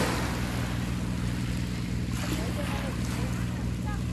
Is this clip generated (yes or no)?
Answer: no